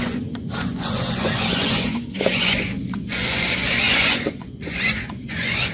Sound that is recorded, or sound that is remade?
remade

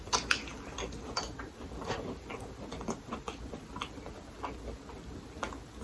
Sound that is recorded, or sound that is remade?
recorded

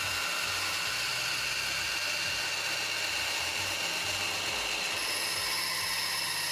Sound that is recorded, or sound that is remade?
recorded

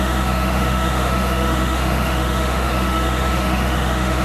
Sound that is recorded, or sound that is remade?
remade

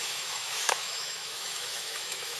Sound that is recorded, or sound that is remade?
remade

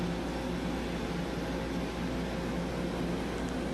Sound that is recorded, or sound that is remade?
recorded